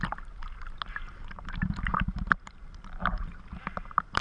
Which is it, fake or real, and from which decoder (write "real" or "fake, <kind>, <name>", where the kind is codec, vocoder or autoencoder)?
real